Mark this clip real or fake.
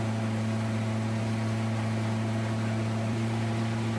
real